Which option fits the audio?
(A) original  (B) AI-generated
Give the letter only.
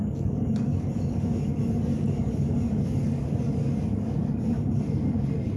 B